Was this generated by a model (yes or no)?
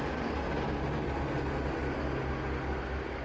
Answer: no